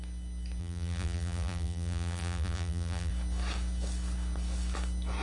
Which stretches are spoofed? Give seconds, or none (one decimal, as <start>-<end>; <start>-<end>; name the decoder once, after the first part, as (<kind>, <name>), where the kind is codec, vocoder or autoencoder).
0.6-3.1 (vocoder, BigVGAN v2)